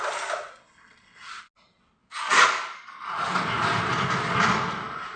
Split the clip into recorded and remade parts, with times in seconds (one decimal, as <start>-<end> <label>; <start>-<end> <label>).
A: 0.0-2.0 recorded; 2.0-3.3 remade; 3.3-5.2 recorded

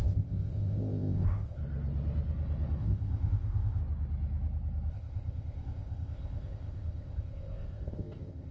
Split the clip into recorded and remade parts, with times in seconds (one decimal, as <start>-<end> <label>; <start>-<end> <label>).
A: 0.0-1.6 remade; 1.6-2.8 recorded; 2.8-3.8 remade; 3.8-4.9 recorded; 4.9-8.5 remade

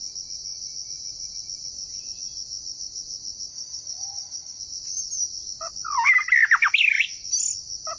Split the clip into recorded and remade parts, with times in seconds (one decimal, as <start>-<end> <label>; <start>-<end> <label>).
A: 0.0-3.5 recorded; 3.5-4.6 remade; 4.6-8.0 recorded